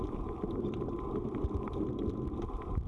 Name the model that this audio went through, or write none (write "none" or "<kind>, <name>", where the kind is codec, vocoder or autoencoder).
none